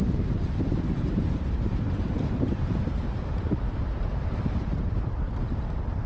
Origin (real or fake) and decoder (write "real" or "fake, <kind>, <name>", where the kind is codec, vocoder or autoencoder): fake, vocoder, BigVGAN v2